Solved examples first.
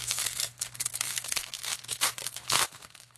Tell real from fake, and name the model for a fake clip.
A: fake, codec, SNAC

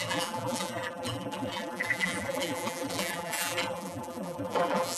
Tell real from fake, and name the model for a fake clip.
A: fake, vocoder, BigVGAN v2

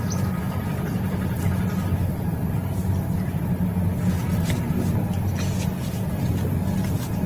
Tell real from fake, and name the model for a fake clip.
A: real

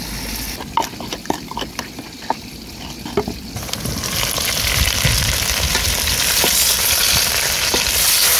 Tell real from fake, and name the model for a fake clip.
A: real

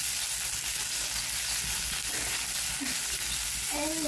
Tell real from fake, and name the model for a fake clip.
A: real